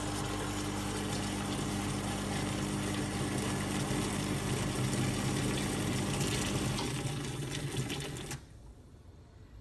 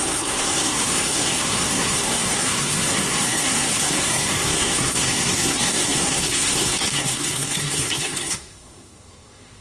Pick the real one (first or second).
first